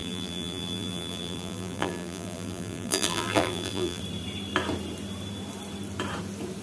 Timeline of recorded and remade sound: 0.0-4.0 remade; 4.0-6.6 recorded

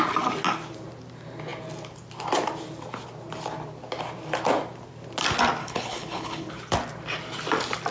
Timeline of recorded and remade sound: 0.0-5.6 recorded; 5.6-6.5 remade; 6.5-7.9 recorded

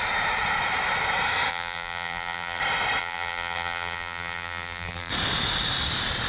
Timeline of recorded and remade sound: 0.0-1.5 recorded; 1.5-2.6 remade; 2.6-3.0 recorded; 3.0-5.1 remade; 5.1-6.3 recorded

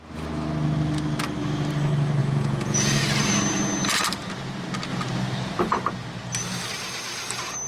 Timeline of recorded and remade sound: 0.0-2.2 recorded; 2.2-3.0 remade; 3.0-7.7 recorded

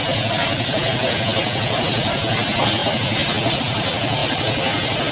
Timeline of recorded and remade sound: 0.0-5.1 recorded